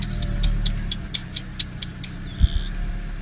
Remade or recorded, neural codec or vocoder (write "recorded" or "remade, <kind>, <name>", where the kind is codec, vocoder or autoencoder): recorded